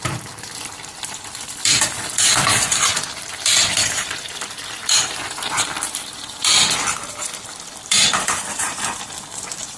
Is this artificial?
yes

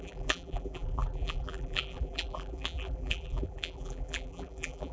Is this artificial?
yes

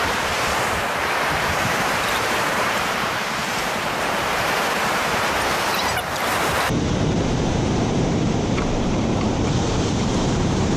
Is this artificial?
yes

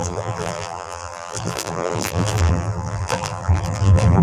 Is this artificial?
yes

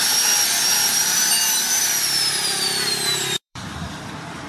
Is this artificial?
yes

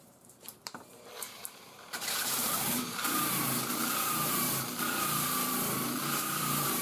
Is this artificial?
yes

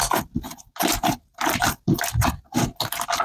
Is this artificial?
no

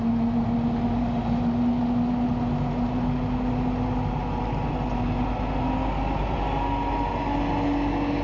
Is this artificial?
no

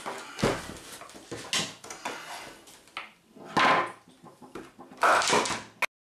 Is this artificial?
no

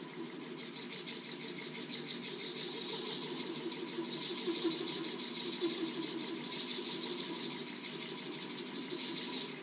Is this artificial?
no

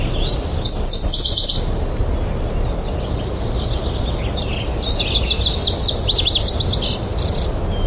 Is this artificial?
no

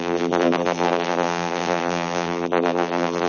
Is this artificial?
yes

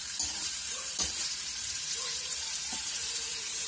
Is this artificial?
yes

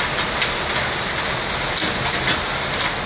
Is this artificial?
no